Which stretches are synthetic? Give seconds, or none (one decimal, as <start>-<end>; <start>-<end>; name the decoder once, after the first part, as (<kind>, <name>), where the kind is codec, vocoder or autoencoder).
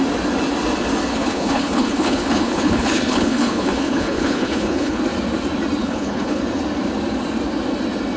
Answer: 1.1-5.0 (codec, HILCodec); 5.8-6.4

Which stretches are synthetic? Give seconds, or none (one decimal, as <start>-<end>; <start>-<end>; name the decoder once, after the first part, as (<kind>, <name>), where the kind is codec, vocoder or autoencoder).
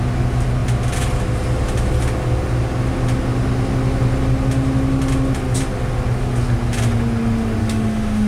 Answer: 7.6-8.3 (autoencoder, DAC-VAE)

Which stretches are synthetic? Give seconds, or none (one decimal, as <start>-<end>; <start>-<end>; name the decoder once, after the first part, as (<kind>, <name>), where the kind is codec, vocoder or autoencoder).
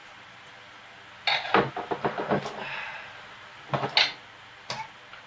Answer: none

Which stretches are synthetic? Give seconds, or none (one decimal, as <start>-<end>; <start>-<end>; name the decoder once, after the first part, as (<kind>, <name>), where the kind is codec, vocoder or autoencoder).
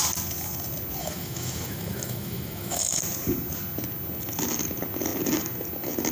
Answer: 1.0-3.0 (autoencoder, DAC-VAE)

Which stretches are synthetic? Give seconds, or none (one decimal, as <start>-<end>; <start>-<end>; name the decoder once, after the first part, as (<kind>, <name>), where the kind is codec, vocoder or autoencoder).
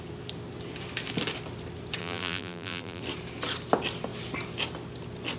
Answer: 2.0-3.0 (vocoder, BigVGAN v2)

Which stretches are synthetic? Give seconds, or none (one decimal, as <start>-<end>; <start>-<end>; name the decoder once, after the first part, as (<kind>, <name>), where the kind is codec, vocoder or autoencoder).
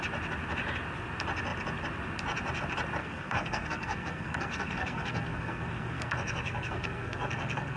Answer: 3.0-7.8 (codec, SNAC)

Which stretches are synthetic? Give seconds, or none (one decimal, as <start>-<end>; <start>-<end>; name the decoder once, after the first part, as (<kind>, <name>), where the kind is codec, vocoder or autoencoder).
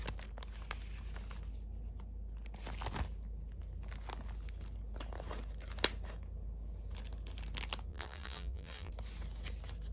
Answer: 7.9-8.9 (vocoder, BigVGAN v2)